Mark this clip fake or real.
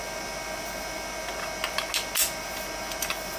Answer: real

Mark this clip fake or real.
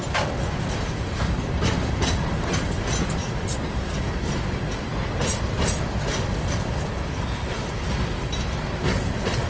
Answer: real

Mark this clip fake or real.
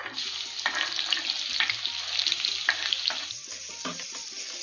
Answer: real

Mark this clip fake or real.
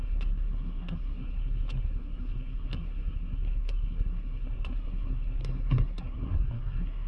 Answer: fake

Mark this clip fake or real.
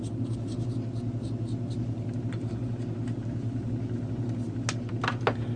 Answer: real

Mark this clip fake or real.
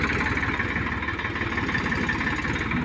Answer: real